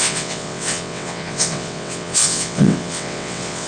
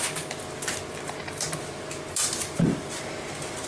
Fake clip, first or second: first